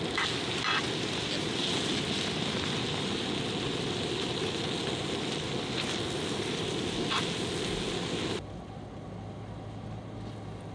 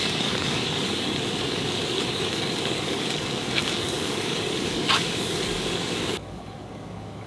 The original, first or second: first